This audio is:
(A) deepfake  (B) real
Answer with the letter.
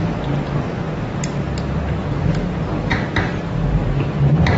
B